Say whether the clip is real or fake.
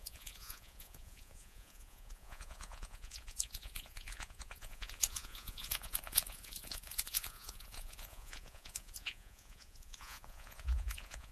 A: fake